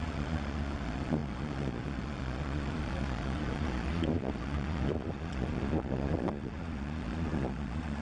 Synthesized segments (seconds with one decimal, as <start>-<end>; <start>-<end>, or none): 0.0-8.0